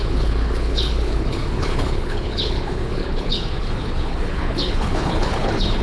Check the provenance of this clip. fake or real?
fake